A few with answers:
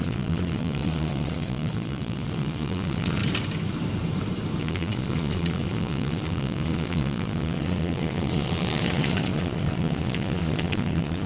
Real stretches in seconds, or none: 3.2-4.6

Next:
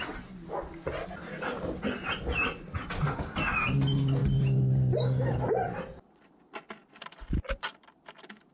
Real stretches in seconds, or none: 0.0-1.5; 2.2-4.2; 6.3-6.8